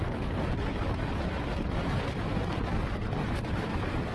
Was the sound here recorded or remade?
remade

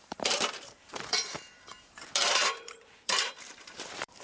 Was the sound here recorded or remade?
remade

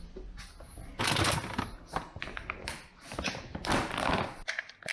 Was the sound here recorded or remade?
recorded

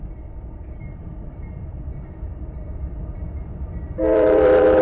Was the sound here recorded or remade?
remade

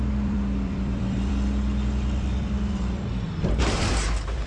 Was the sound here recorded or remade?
remade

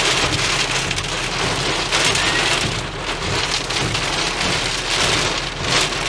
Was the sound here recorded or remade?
recorded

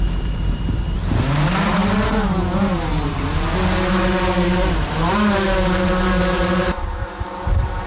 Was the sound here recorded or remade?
remade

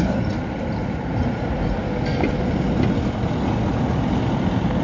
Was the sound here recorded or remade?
recorded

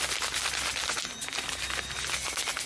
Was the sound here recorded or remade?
recorded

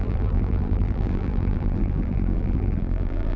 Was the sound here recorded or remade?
remade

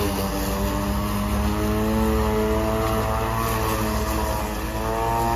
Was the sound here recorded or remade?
recorded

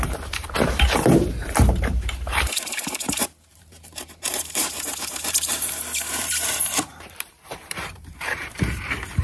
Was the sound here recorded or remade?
remade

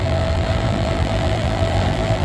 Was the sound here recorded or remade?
remade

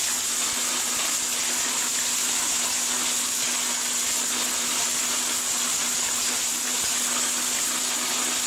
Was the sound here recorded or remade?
recorded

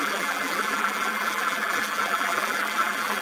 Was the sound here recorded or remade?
remade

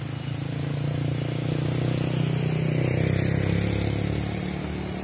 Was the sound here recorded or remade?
recorded